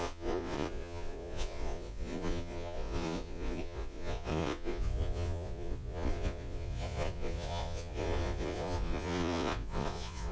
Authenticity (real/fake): fake